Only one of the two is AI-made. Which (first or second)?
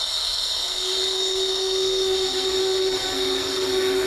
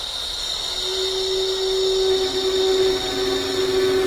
first